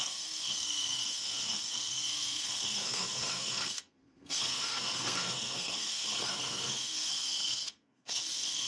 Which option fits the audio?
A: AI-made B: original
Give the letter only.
A